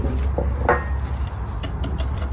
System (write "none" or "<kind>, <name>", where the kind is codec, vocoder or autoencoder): none